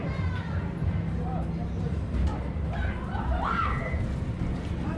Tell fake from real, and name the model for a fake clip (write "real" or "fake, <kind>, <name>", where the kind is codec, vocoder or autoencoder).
real